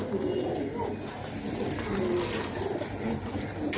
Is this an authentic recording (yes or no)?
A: yes